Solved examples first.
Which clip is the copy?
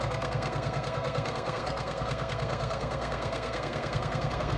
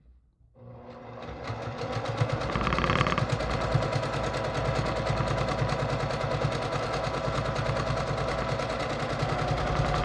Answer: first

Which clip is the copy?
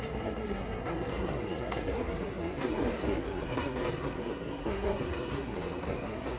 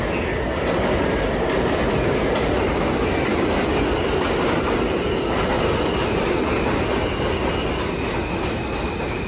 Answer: first